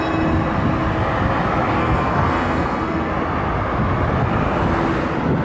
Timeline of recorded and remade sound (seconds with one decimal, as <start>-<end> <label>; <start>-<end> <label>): 0.0-1.8 recorded; 1.8-3.1 remade; 3.1-5.4 recorded